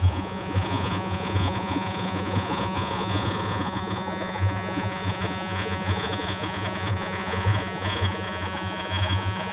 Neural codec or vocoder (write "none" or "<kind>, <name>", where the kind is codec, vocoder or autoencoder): vocoder, Vocos